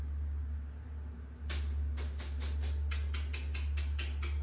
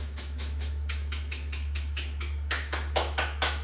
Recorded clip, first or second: first